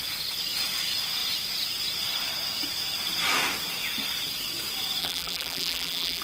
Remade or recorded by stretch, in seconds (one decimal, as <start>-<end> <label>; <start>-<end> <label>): 0.0-5.0 recorded; 5.0-6.2 remade